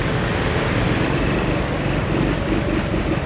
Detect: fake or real real